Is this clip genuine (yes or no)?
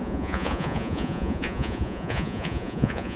no